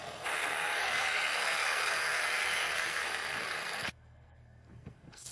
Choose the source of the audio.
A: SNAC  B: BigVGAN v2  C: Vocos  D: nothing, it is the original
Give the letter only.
A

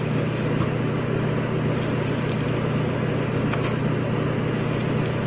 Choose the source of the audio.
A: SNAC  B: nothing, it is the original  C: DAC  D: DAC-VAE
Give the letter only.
B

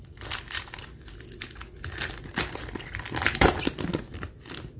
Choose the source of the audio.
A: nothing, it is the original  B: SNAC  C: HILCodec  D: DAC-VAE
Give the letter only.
A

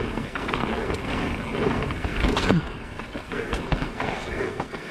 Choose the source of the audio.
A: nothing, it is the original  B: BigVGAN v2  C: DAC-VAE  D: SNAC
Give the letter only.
D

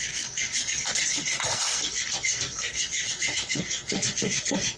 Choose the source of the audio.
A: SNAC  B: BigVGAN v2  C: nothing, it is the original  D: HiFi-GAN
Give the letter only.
A